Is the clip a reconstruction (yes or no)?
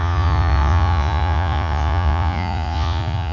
yes